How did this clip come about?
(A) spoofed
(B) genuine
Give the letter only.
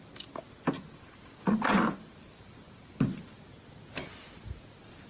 B